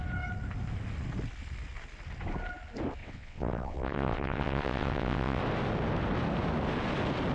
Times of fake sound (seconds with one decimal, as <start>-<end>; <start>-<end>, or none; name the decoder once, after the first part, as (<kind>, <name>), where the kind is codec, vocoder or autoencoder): 3.0-5.4 (vocoder, WaveNeXt)